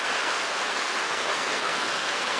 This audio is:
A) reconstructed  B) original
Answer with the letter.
A